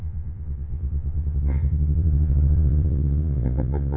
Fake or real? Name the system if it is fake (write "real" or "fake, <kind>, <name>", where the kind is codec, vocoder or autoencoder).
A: fake, vocoder, Vocos